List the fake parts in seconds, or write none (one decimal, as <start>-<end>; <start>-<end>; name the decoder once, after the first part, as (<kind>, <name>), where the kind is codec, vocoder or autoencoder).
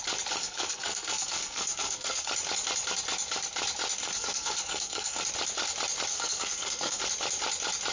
0.4-2.3 (codec, SNAC); 4.0-5.2; 6.1-7.0